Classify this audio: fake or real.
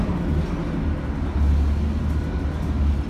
real